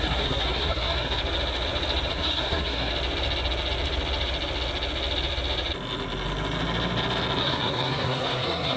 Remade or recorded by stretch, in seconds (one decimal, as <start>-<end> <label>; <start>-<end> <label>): 0.0-1.2 remade; 1.2-2.1 recorded; 2.1-2.9 remade; 2.9-7.4 recorded; 7.4-8.8 remade